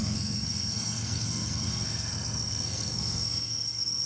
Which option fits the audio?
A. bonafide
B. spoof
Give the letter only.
B